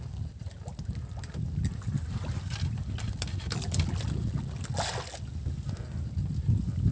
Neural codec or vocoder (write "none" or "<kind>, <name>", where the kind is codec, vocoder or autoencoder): none